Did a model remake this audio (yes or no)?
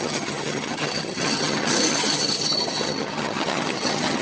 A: yes